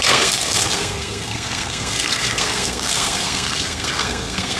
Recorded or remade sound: remade